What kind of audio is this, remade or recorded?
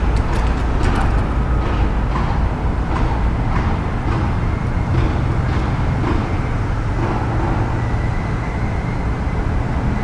recorded